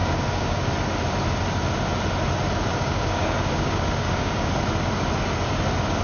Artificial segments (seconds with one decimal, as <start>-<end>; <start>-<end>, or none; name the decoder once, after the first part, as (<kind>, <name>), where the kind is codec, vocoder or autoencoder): 0.0-0.7 (codec, DAC); 2.7-4.5